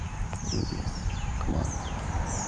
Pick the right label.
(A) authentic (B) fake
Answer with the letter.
B